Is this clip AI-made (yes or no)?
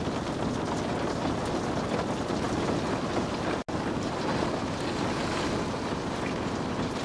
no